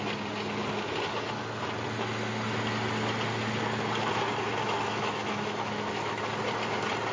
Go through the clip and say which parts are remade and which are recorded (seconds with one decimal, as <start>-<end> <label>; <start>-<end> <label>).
0.0-4.6 recorded; 4.6-6.2 remade; 6.2-7.1 recorded